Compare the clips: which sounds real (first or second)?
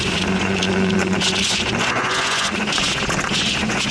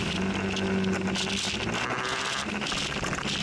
second